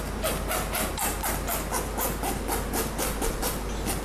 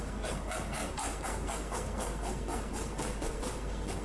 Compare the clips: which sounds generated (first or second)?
second